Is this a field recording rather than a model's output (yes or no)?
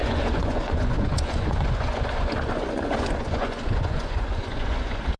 no